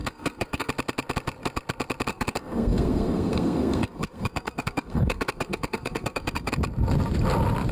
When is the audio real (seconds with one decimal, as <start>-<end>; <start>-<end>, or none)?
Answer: 0.7-2.1; 6.5-7.7